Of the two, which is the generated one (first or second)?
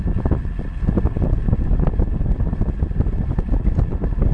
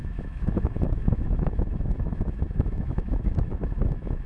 second